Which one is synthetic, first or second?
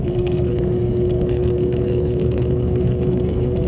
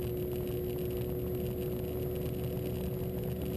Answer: first